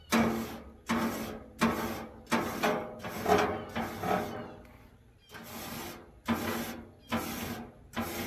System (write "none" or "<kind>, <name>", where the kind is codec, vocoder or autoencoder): none